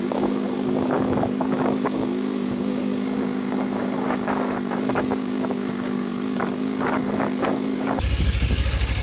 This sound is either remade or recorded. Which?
remade